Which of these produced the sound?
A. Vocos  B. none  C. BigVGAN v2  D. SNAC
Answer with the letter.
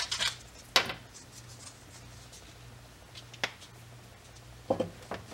B